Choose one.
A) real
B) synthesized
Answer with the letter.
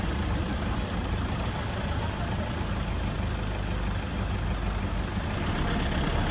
A